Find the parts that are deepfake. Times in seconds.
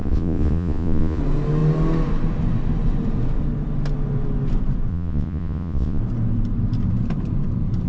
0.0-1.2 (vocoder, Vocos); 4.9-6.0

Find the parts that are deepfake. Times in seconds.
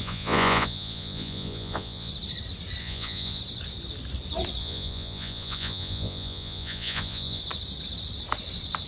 0.0-2.1 (vocoder, Vocos); 2.8-3.4; 4.6-7.4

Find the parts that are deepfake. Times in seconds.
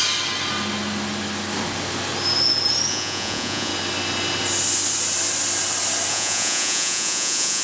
2.9-3.7 (vocoder, Vocos); 6.1-7.6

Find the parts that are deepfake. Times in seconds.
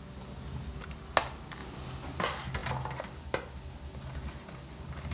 none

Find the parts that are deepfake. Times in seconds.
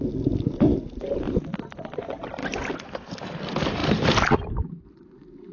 none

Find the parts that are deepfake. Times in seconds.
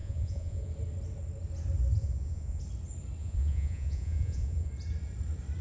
0.0-0.7 (vocoder, Vocos); 2.0-2.6; 3.2-4.7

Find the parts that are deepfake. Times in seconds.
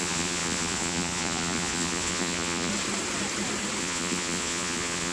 0.0-2.7 (vocoder, Vocos); 3.8-5.1